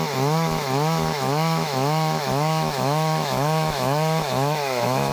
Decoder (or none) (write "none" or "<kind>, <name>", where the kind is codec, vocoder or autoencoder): autoencoder, DAC-VAE